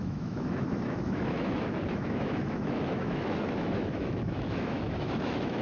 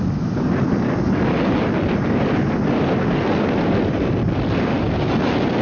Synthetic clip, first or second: first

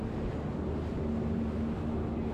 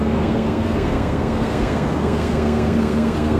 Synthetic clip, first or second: second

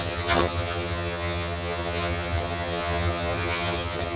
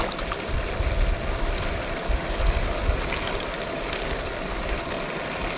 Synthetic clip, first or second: first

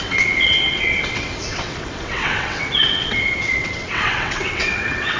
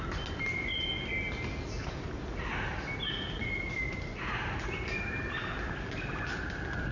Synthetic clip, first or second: first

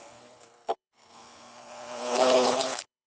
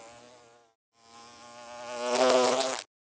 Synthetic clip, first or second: first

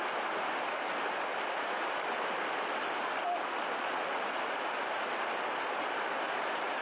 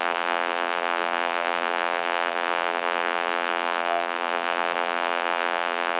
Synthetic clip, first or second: second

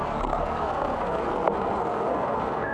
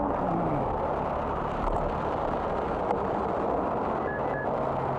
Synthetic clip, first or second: first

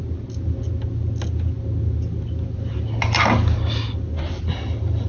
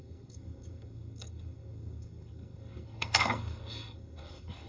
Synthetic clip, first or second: second